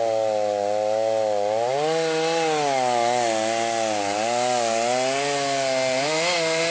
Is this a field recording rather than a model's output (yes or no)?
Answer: yes